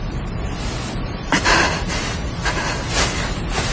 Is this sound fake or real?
real